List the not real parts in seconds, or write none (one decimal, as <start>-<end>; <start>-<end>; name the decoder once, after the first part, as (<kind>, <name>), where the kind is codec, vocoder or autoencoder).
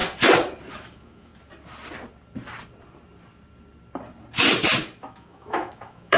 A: 0.7-1.3 (autoencoder, DAC-VAE); 5.0-6.2